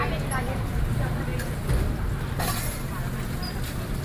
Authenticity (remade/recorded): recorded